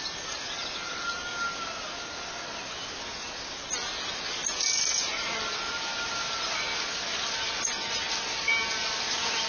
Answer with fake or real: real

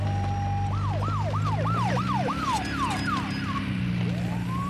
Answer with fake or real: real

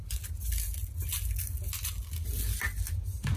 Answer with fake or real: real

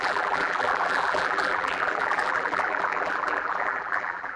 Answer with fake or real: fake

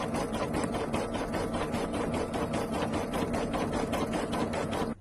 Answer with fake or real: fake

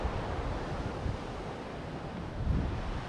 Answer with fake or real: real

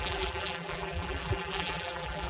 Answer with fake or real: fake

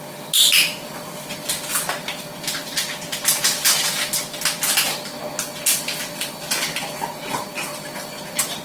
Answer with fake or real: real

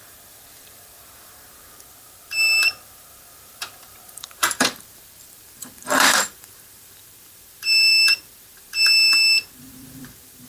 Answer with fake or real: fake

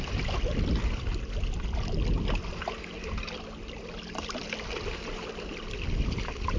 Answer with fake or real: real